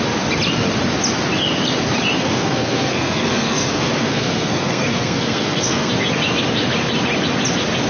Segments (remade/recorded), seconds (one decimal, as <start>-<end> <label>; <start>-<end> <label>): 0.0-2.2 recorded; 2.2-5.9 remade; 5.9-7.9 recorded